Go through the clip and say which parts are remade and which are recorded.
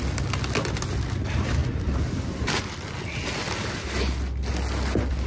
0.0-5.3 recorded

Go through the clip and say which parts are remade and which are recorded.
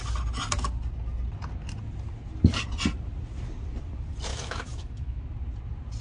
0.0-4.3 recorded; 4.3-5.2 remade; 5.2-6.0 recorded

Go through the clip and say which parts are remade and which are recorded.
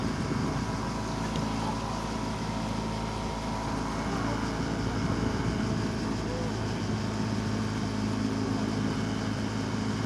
0.0-10.1 recorded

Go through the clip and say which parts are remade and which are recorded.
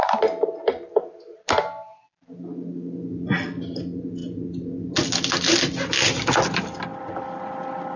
0.0-8.0 recorded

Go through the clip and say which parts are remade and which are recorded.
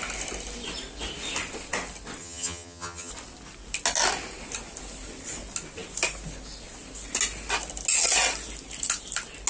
0.0-2.2 recorded; 2.2-3.1 remade; 3.1-9.5 recorded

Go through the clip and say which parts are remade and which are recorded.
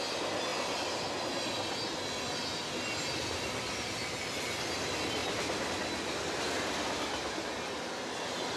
0.0-5.2 recorded; 5.2-5.7 remade; 5.7-8.6 recorded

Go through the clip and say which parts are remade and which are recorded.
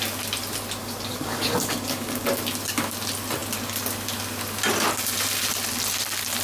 0.0-0.8 recorded; 0.8-2.3 remade; 2.3-6.4 recorded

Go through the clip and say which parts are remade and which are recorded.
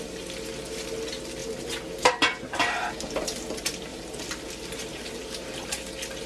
0.0-1.4 recorded; 1.4-2.9 remade; 2.9-3.9 recorded; 3.9-4.5 remade; 4.5-4.9 recorded; 4.9-5.7 remade; 5.7-6.3 recorded